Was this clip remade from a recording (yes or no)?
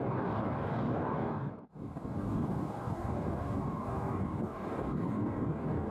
yes